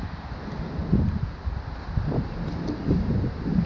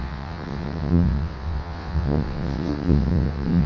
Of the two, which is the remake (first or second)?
second